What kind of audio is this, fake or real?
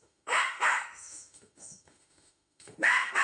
fake